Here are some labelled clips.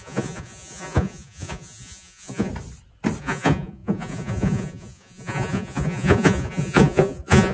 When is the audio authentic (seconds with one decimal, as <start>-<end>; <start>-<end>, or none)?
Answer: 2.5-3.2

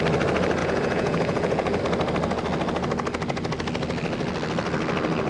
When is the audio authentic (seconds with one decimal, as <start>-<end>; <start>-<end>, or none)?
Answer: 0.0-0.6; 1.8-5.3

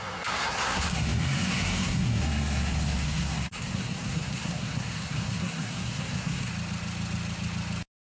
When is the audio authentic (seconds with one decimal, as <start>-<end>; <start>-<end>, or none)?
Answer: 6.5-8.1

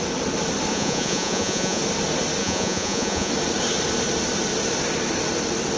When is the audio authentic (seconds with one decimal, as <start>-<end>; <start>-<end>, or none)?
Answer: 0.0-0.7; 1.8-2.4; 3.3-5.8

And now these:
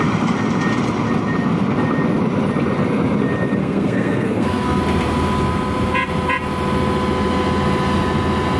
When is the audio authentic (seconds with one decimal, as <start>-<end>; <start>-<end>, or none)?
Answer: 0.0-3.6; 4.8-8.6